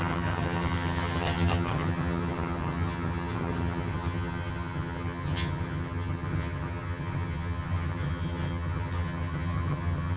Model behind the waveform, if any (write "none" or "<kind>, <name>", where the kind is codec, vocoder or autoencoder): vocoder, HiFi-GAN